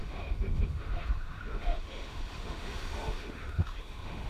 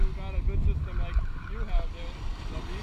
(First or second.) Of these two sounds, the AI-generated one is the first